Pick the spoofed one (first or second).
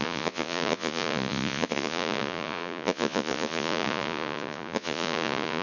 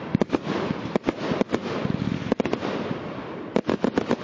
first